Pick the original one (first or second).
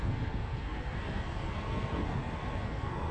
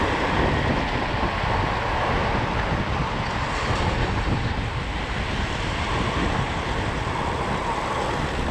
second